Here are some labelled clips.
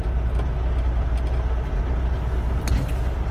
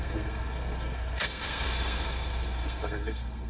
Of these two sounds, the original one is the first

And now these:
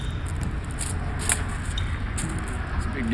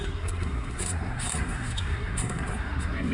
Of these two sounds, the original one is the first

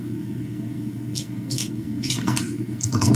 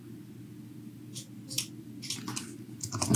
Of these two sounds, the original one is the second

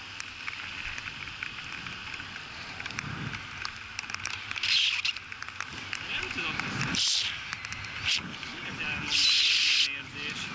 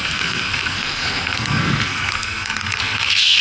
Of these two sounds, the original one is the first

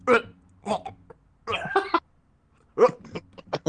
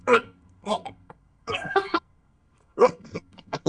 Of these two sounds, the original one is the first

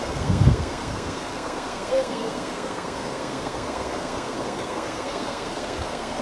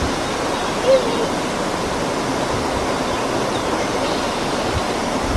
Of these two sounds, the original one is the second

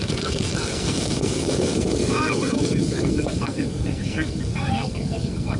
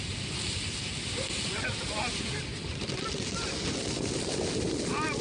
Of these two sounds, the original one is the second